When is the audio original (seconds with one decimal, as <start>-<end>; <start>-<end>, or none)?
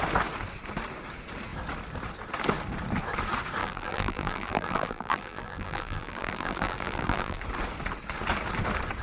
0.0-3.6; 7.4-9.0